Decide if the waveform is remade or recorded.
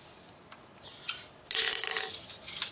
recorded